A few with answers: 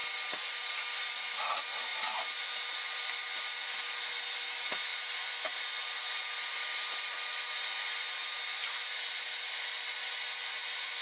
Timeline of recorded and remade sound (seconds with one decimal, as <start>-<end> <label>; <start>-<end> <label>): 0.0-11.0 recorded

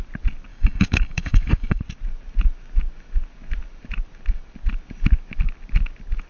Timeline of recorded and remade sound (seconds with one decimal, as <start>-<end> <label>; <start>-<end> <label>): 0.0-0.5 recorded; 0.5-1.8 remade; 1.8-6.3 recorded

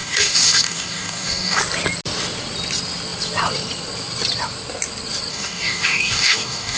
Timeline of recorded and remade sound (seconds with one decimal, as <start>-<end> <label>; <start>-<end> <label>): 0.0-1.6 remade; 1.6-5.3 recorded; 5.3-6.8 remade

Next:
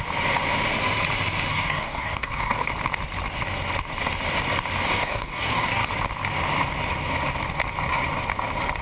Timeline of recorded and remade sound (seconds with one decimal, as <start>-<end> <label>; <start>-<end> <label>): 0.0-1.5 recorded; 1.5-2.7 remade; 2.7-5.0 recorded; 5.0-5.9 remade; 5.9-8.8 recorded

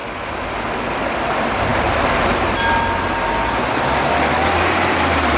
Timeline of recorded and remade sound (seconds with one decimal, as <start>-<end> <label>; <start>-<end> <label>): 0.0-5.4 recorded

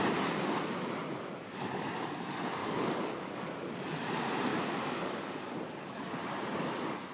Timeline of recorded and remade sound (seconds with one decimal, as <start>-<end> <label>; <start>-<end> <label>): 0.0-2.6 recorded; 2.6-3.5 remade; 3.5-4.5 recorded; 4.5-6.1 remade; 6.1-7.1 recorded

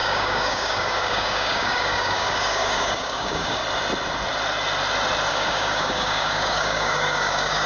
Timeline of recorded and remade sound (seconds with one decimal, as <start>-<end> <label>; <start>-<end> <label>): 0.0-3.6 remade; 3.6-5.3 recorded; 5.3-7.7 remade

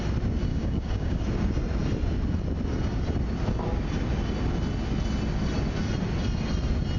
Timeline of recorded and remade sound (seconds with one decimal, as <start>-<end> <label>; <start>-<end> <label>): 0.0-0.5 recorded; 0.5-1.2 remade; 1.2-7.0 recorded